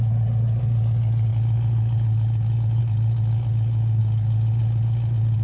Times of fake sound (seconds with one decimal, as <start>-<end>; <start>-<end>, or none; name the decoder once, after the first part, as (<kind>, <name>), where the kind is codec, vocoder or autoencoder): none